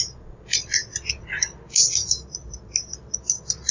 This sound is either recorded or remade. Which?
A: recorded